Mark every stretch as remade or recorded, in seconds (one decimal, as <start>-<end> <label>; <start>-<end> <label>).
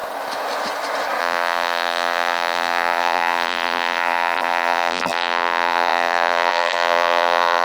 0.0-1.2 recorded; 1.2-7.6 remade